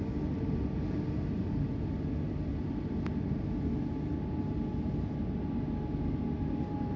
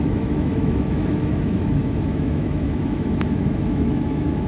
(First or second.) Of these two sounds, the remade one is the second